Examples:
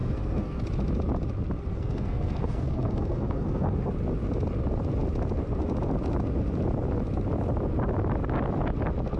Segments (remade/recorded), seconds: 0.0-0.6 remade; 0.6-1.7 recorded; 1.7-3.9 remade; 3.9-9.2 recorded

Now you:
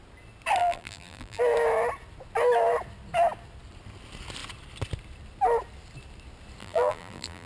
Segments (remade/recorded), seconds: 0.0-0.6 recorded; 0.6-1.4 remade; 1.4-6.6 recorded; 6.6-7.5 remade

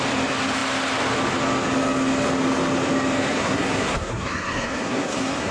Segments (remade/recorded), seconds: 0.0-3.3 recorded; 3.3-5.5 remade

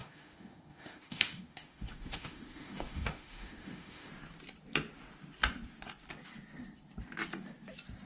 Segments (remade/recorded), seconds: 0.0-4.1 remade; 4.1-8.1 recorded

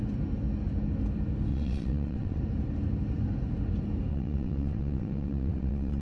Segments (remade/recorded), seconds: 0.0-1.5 recorded; 1.5-2.4 remade; 2.4-4.1 recorded; 4.1-6.0 remade

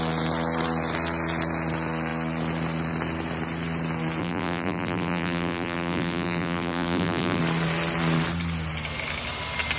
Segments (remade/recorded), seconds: 0.0-4.2 recorded; 4.2-7.4 remade; 7.4-9.8 recorded

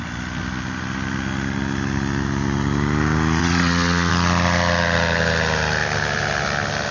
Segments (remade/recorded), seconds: 0.0-3.4 recorded; 3.4-4.1 remade; 4.1-6.9 recorded

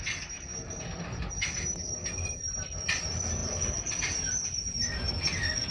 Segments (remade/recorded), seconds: 0.0-5.7 recorded